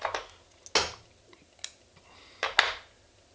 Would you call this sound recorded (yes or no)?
yes